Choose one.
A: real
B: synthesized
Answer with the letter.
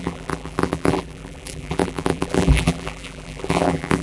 B